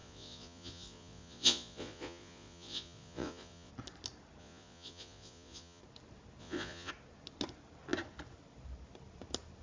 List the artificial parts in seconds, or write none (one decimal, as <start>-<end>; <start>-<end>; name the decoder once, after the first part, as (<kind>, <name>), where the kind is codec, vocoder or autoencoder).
0.0-3.7 (vocoder, Vocos); 4.4-5.8; 6.4-6.9